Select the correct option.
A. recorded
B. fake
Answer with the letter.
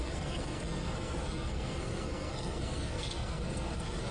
B